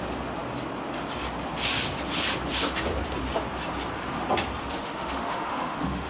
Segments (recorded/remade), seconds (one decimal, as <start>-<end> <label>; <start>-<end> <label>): 0.0-4.6 recorded; 4.6-6.1 remade